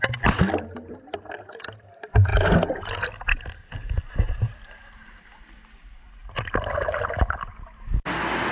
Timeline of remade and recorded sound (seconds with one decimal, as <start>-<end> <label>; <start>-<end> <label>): 0.0-8.5 recorded